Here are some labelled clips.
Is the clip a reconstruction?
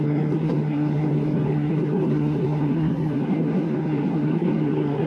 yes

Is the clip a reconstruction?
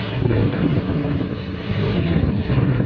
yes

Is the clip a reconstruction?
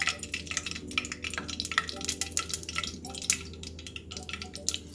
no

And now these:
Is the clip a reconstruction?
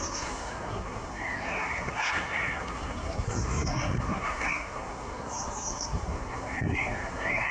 yes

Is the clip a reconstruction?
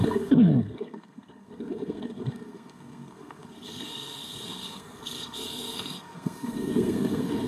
yes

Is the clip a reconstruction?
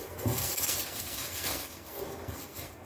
yes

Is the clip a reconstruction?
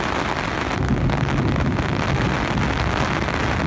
no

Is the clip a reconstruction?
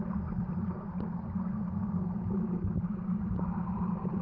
no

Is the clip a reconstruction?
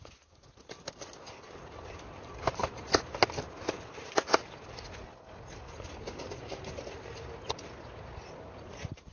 no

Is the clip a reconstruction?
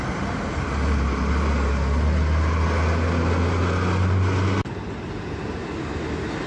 no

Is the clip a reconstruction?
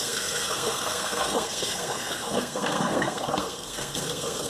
yes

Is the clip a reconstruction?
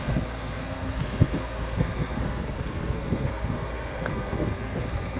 yes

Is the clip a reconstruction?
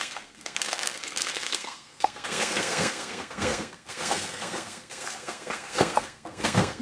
yes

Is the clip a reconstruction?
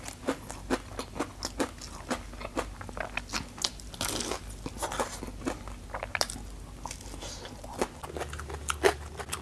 no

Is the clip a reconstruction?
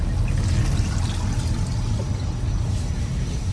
no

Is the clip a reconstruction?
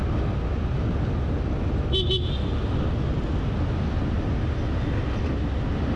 no